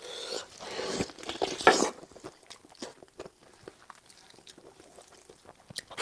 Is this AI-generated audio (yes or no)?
no